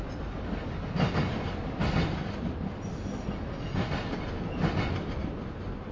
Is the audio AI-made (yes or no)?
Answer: no